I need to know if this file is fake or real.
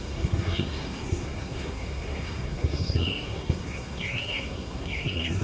fake